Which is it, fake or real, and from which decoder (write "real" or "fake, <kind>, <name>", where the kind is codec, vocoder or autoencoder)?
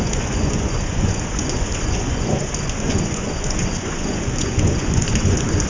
fake, vocoder, Vocos